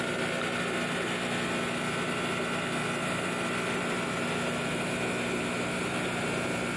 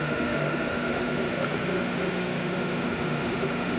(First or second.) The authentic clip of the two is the first